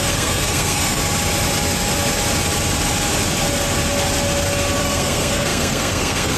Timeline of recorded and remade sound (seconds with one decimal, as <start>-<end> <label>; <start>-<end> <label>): 0.0-1.0 remade; 1.0-4.8 recorded; 4.8-6.4 remade